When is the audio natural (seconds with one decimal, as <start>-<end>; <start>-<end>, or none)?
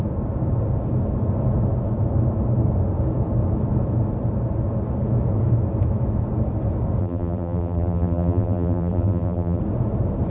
0.0-7.0; 9.6-10.3